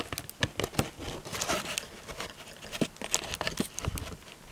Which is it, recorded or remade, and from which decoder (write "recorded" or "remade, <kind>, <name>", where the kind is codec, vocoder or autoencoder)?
recorded